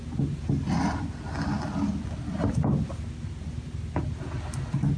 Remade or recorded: recorded